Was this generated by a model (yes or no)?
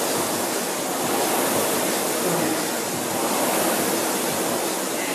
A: no